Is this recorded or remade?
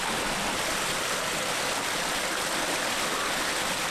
recorded